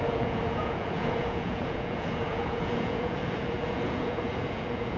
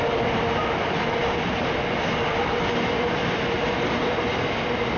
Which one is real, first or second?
second